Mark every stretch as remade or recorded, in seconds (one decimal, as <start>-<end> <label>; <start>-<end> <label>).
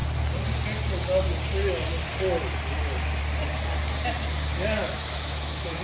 0.0-4.8 recorded; 4.8-5.8 remade